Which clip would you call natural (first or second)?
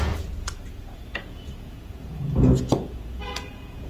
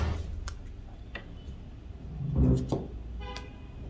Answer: second